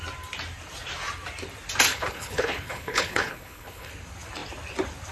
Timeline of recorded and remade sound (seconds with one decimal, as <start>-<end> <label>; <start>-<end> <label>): 0.0-1.9 recorded; 1.9-3.9 remade; 3.9-5.1 recorded